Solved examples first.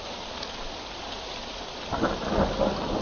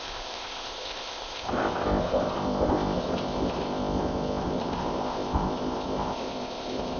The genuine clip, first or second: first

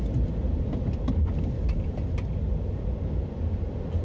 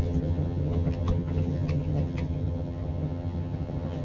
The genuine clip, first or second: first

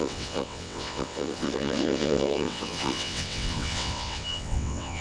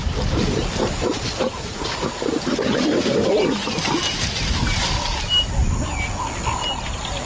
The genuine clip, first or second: second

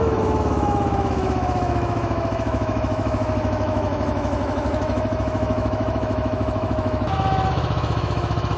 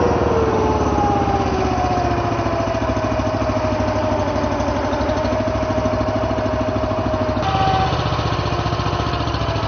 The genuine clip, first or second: second